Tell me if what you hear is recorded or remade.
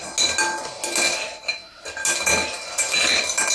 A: recorded